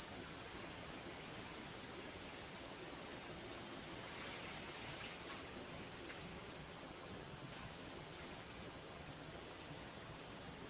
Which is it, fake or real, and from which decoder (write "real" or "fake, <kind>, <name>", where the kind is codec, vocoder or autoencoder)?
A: fake, vocoder, HiFi-GAN